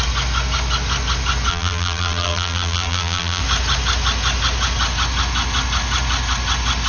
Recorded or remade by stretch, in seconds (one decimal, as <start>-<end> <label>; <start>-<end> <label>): 0.0-1.5 recorded; 1.5-3.4 remade; 3.4-6.9 recorded